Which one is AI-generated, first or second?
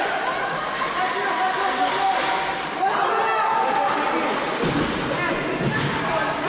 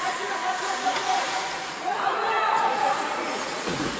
second